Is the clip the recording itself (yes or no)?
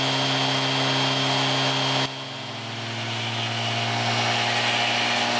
yes